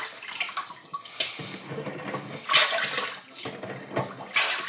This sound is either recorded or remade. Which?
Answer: recorded